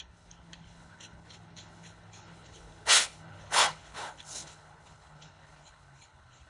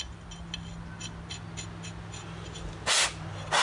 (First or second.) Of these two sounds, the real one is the second